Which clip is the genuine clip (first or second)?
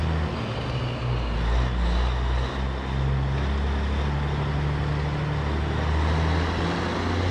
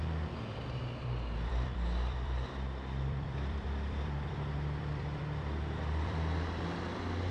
first